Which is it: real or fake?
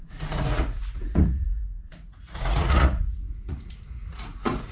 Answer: fake